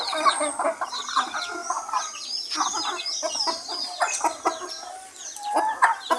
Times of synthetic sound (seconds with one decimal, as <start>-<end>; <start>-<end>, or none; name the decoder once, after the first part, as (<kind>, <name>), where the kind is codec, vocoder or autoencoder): none